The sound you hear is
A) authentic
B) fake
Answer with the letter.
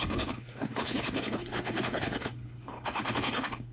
B